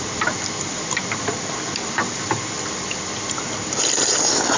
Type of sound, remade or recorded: remade